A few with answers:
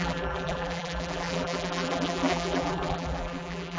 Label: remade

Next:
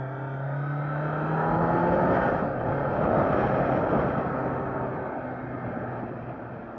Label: recorded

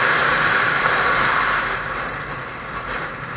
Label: remade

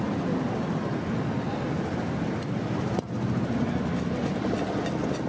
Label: recorded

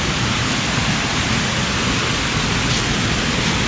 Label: recorded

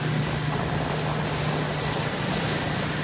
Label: recorded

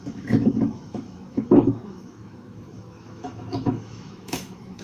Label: remade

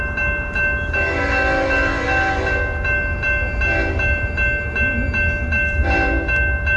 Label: recorded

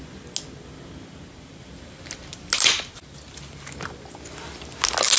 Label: recorded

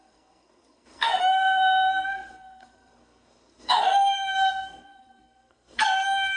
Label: remade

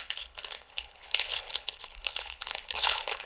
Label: remade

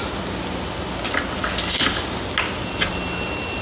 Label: recorded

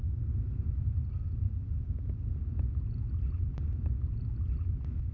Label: recorded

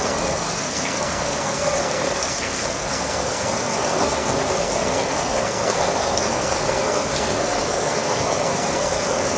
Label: remade